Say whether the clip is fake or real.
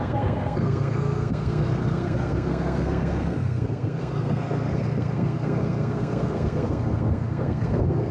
fake